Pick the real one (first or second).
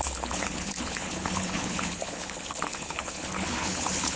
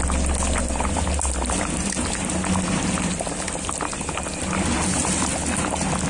second